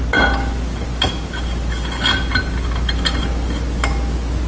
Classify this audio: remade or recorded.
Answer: recorded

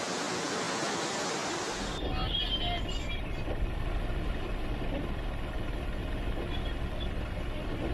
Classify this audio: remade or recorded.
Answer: recorded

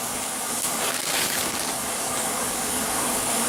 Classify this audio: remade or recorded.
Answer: remade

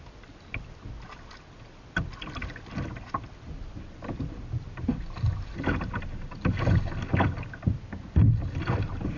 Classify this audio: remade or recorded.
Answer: recorded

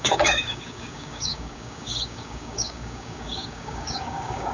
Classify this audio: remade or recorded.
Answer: remade